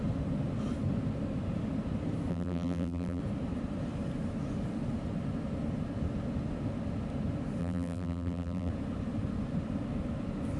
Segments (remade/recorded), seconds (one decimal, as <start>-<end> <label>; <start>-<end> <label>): 0.0-2.3 recorded; 2.3-3.2 remade; 3.2-7.6 recorded; 7.6-8.7 remade; 8.7-10.6 recorded